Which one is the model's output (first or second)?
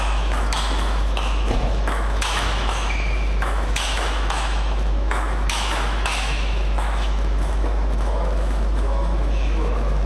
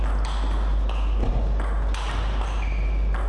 first